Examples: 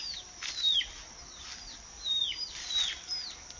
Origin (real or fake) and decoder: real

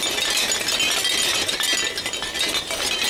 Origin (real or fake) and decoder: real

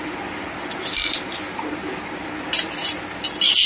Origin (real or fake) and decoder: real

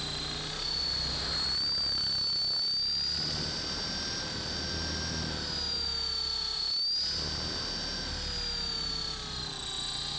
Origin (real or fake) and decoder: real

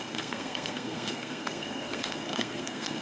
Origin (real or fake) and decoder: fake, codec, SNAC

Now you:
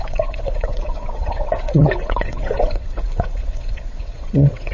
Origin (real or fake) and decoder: fake, vocoder, WaveNeXt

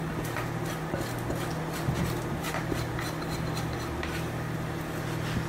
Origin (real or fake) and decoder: real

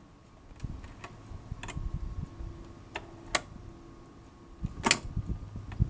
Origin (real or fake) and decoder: real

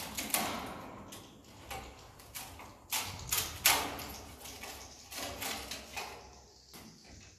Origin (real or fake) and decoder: real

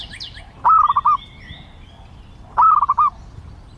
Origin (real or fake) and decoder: real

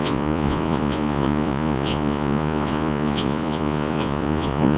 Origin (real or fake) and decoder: fake, vocoder, Vocos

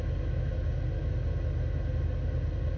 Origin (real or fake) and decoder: real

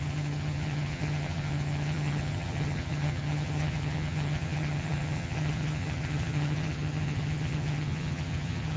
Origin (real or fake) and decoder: fake, vocoder, HiFi-GAN